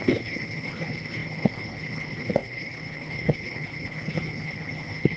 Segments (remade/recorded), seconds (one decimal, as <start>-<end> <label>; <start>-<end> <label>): 0.0-5.2 remade